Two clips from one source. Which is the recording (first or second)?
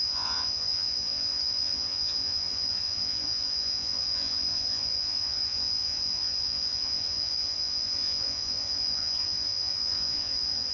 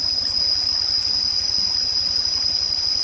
second